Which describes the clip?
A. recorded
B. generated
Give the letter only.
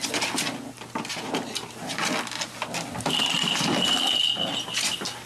A